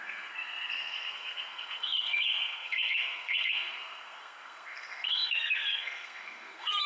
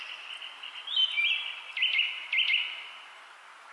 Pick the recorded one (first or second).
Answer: second